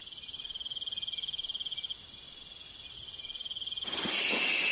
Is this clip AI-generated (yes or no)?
no